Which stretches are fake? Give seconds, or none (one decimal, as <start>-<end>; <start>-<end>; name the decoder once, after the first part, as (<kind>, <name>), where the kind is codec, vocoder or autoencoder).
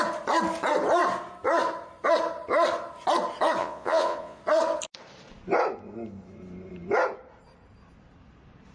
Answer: 3.6-4.4 (vocoder, Vocos)